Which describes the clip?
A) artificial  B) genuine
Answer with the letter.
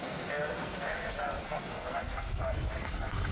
A